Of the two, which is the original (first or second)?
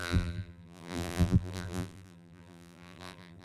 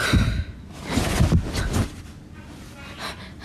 second